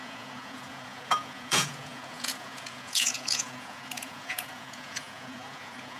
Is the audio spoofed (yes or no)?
yes